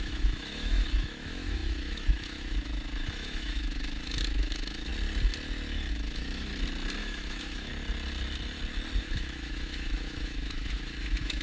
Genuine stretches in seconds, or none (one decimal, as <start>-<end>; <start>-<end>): 4.9-5.9; 6.5-7.0; 7.7-9.0

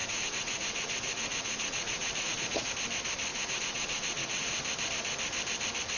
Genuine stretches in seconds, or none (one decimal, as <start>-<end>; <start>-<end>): 2.7-3.3; 4.5-6.0

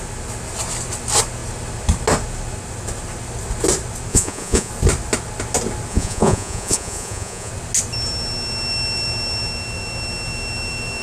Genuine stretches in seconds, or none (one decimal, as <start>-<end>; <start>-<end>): 0.0-4.1; 4.7-5.9; 7.5-11.0

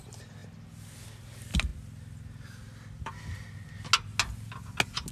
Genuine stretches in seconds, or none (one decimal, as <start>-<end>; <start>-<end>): 0.0-5.1

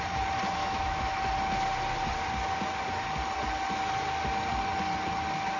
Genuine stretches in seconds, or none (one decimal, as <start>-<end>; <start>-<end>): 0.0-0.6; 1.2-5.6

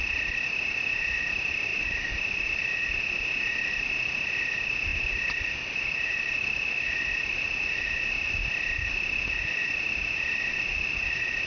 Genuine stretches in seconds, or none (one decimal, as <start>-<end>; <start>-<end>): 0.0-1.7; 2.9-6.1; 8.4-9.6

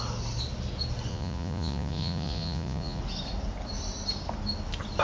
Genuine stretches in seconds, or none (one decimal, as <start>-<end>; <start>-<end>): 0.0-1.1; 3.0-5.0

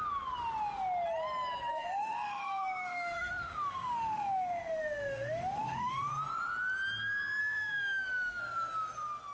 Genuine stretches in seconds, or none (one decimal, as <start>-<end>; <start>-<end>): 0.0-1.7; 6.1-7.4; 8.4-9.3